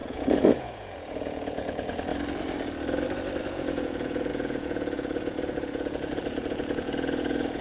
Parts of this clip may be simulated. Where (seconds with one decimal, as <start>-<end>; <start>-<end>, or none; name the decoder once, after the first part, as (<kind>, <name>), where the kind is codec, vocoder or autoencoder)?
0.0-2.1 (vocoder, Vocos); 3.4-7.6